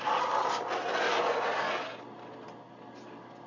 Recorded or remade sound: recorded